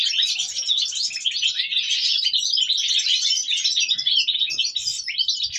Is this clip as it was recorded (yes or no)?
yes